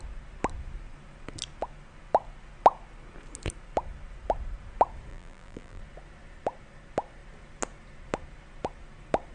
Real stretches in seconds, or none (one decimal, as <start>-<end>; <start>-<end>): 0.0-5.1; 5.8-9.3